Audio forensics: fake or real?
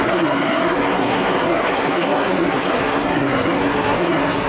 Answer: fake